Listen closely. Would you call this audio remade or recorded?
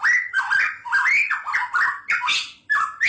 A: recorded